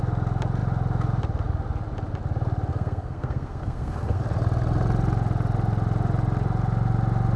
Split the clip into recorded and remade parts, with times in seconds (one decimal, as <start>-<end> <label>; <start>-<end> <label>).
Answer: 0.0-2.7 recorded; 2.7-4.2 remade; 4.2-7.4 recorded